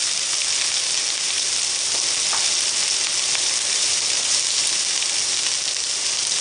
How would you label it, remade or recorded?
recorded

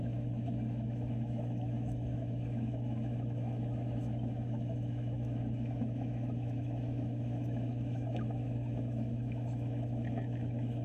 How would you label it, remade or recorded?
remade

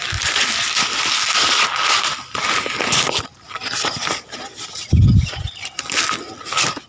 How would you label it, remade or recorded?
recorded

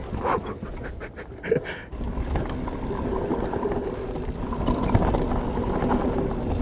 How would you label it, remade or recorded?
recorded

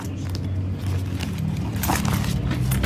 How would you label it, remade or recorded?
recorded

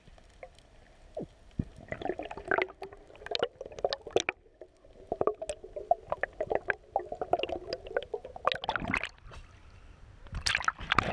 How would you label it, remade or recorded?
recorded